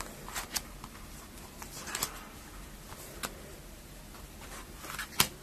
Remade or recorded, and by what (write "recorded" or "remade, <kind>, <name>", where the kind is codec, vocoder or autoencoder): recorded